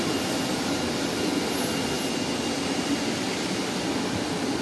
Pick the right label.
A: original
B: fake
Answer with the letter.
A